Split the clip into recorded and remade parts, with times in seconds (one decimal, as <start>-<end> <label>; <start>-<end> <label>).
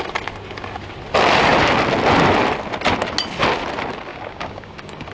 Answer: 0.0-4.1 recorded; 4.1-5.1 remade